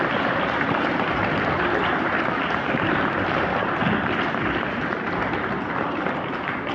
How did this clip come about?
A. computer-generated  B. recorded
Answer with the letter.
B